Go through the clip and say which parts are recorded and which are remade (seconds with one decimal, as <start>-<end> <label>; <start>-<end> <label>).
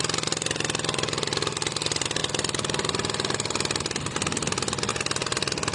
0.0-5.7 recorded